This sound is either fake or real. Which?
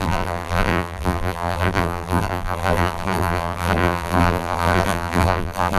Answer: fake